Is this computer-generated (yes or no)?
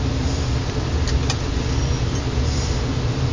no